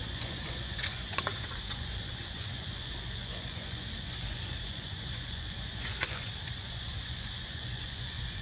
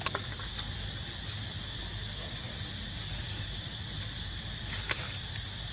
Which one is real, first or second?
second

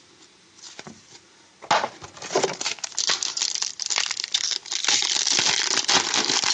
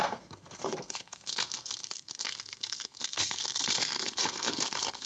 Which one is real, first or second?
first